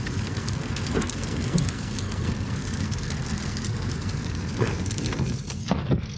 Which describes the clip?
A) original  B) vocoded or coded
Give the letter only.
B